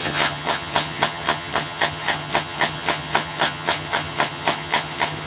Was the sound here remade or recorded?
remade